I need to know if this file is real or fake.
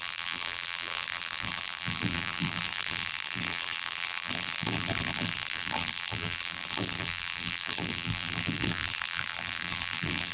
fake